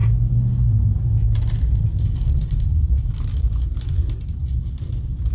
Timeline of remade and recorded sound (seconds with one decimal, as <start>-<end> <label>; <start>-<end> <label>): 0.0-1.8 recorded; 1.8-5.3 remade